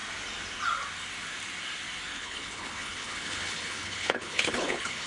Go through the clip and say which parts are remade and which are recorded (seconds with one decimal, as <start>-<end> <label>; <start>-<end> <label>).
0.0-2.1 recorded; 2.1-5.1 remade